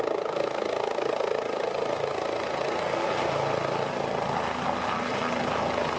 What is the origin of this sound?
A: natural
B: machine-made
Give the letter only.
A